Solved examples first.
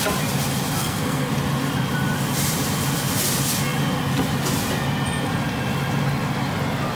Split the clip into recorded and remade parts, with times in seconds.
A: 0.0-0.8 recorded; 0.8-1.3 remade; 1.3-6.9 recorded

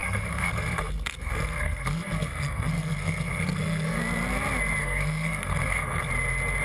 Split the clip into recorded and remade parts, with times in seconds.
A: 0.0-4.0 remade; 4.0-4.8 recorded; 4.8-6.1 remade; 6.1-6.6 recorded

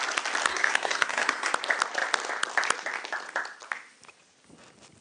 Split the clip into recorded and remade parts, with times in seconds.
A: 0.0-0.5 recorded; 0.5-1.5 remade; 1.5-5.0 recorded

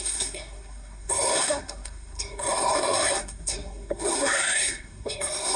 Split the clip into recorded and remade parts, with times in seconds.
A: 0.0-5.6 remade

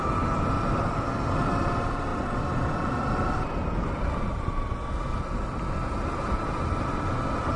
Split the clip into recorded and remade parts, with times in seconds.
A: 0.0-7.6 recorded

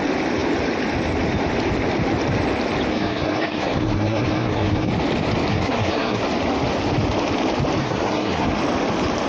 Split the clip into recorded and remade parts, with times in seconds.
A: 0.0-2.9 recorded; 2.9-4.9 remade; 4.9-5.5 recorded; 5.5-6.2 remade; 6.2-7.8 recorded; 7.8-8.6 remade; 8.6-9.3 recorded

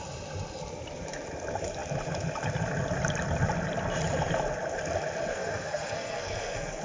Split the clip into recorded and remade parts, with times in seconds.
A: 0.0-5.3 recorded; 5.3-6.8 remade